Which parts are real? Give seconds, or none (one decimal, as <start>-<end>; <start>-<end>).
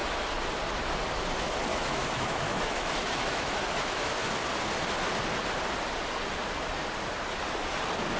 0.0-1.7; 4.2-8.2